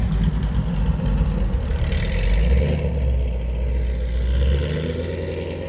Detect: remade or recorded recorded